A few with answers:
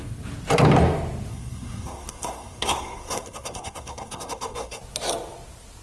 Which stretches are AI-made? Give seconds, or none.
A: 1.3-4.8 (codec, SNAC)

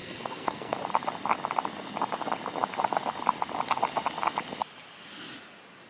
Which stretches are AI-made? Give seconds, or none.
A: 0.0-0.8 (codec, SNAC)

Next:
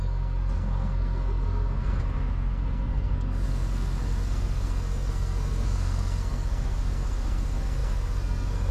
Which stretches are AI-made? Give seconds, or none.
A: 0.0-8.7 (codec, SNAC)

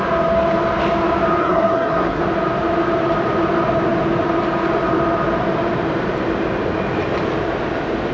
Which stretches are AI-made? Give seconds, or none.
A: 1.4-2.2 (codec, SNAC)

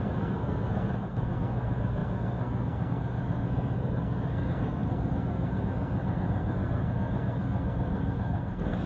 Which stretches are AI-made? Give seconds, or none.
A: 0.0-8.9 (codec, SNAC)